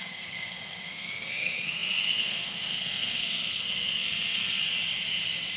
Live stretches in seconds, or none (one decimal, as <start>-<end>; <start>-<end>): 4.6-5.6